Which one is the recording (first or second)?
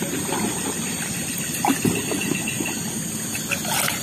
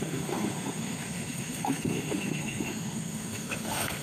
first